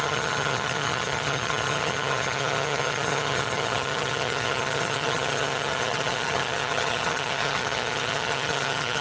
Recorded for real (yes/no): no